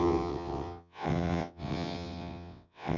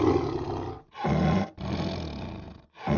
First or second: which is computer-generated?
first